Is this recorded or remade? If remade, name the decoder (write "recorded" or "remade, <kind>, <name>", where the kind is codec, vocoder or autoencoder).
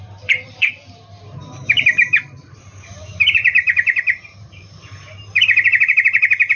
remade, vocoder, BigVGAN v2